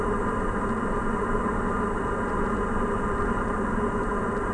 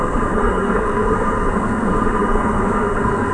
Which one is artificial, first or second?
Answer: second